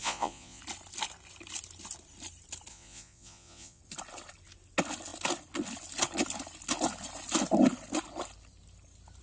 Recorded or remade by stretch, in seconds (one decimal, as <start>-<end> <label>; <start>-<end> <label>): 0.0-0.6 remade; 0.6-2.7 recorded; 2.7-3.8 remade; 3.8-9.2 recorded